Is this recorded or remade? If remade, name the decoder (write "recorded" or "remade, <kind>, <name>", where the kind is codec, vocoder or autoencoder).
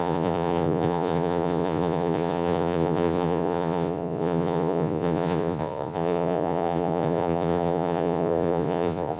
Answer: remade, vocoder, Vocos